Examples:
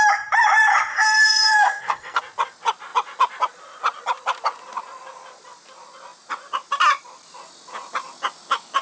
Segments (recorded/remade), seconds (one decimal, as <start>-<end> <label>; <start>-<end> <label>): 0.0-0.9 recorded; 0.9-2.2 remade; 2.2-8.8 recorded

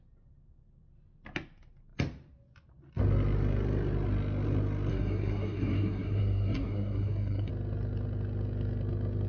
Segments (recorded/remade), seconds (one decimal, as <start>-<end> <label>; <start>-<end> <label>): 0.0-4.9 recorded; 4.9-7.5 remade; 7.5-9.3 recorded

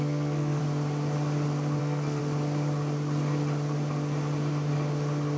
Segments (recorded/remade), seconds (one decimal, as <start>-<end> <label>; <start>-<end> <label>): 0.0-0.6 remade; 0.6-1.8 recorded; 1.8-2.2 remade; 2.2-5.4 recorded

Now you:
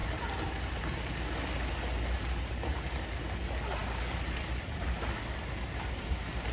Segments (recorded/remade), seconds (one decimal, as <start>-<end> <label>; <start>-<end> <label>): 0.0-6.5 recorded

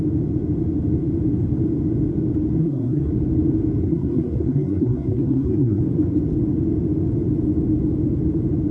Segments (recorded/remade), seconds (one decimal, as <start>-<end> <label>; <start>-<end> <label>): 0.0-2.6 recorded; 2.6-3.1 remade; 3.1-3.8 recorded; 3.8-5.8 remade; 5.8-8.7 recorded

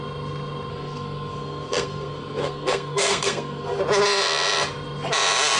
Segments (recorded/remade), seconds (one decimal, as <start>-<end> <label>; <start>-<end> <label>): 0.0-0.7 recorded; 0.7-3.8 remade; 3.8-5.6 recorded

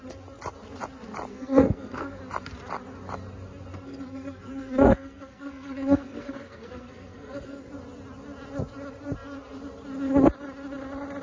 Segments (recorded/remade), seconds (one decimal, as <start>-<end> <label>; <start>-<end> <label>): 0.0-1.3 recorded; 1.3-2.2 remade; 2.2-3.7 recorded; 3.7-7.7 remade; 7.7-11.2 recorded